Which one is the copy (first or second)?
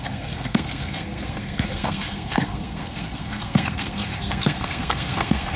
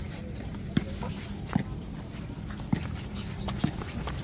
first